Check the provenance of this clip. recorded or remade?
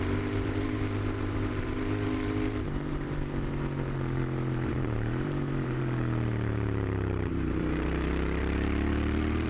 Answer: remade